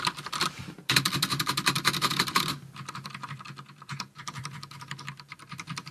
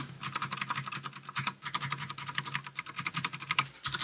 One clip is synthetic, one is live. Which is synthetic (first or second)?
first